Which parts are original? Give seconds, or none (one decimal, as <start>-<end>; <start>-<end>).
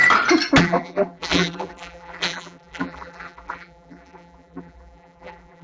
0.0-0.6